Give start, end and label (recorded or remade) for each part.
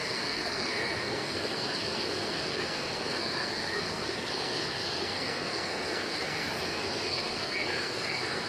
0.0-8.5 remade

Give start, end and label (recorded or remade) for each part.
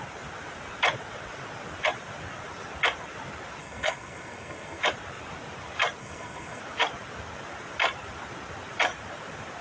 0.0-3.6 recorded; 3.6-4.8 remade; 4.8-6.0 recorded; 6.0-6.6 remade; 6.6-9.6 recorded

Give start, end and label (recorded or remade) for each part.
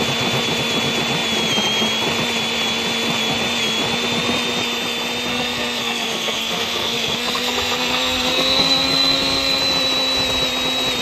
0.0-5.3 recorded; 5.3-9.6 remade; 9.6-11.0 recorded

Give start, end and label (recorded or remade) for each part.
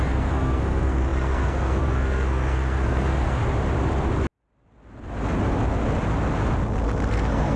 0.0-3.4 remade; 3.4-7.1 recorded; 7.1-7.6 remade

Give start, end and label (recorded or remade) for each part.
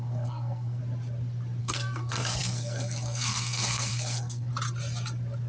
0.0-0.8 remade; 0.8-1.6 recorded; 1.6-4.5 remade; 4.5-5.5 recorded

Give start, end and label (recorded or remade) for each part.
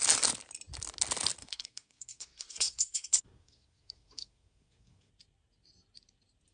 0.0-1.4 recorded; 1.4-5.1 remade; 5.1-6.5 recorded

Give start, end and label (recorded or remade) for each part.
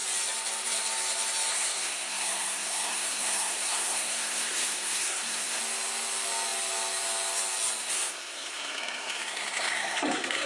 0.0-1.5 recorded; 1.5-5.6 remade; 5.6-7.8 recorded; 7.8-10.5 remade